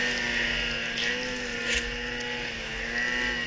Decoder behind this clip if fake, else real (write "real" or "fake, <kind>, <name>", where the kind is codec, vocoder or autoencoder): real